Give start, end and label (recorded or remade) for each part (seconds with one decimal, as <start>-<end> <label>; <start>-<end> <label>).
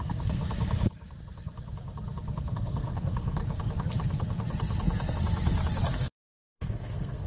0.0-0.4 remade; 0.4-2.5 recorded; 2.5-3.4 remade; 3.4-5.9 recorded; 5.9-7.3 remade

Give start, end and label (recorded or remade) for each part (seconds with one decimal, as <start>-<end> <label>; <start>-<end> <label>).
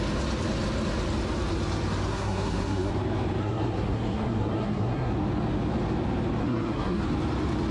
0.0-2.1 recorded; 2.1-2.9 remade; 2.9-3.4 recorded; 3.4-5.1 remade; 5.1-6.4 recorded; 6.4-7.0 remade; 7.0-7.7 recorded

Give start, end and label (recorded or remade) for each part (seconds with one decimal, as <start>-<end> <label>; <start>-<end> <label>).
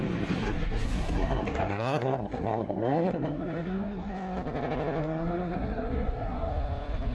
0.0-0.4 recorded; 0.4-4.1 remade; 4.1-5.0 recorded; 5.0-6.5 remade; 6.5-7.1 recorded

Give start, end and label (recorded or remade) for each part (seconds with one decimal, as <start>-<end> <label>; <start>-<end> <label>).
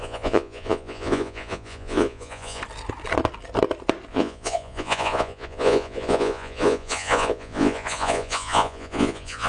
0.0-2.6 remade; 2.6-4.1 recorded; 4.1-9.5 remade